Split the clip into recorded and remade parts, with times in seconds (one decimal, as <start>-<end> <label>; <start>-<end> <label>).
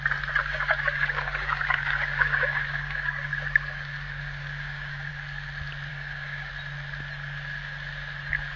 0.0-0.4 recorded; 0.4-5.1 remade; 5.1-5.9 recorded; 5.9-6.5 remade; 6.5-8.6 recorded